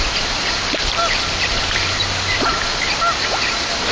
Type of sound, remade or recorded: recorded